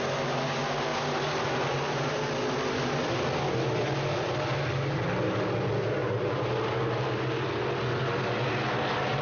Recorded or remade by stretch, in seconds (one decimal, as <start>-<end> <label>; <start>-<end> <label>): 0.0-6.0 recorded; 6.0-6.7 remade; 6.7-9.2 recorded